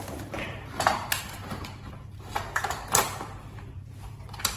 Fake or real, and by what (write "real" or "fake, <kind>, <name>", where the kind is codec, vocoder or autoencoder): fake, vocoder, BigVGAN v2